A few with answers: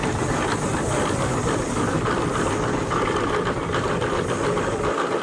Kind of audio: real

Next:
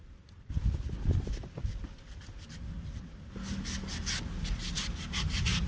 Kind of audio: real